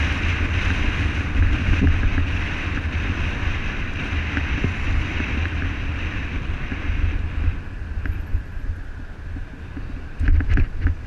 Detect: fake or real real